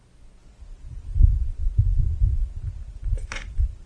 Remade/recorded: remade